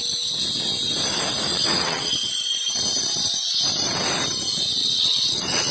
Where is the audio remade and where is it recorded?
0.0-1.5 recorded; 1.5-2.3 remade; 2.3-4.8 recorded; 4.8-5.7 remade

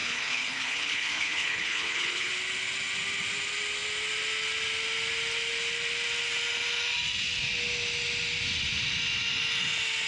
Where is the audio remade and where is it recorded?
0.0-2.3 remade; 2.3-10.1 recorded

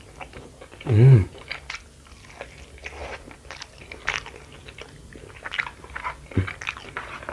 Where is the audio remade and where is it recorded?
0.0-7.3 recorded

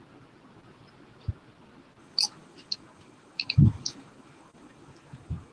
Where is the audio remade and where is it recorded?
0.0-2.0 recorded; 2.0-5.5 remade

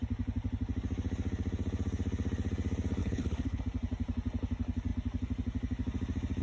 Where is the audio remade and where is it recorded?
0.0-3.0 recorded; 3.0-3.6 remade; 3.6-6.4 recorded

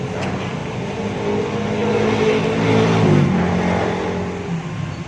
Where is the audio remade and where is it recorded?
0.0-5.1 recorded